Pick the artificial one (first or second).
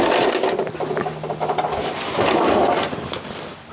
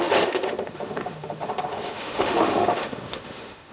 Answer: second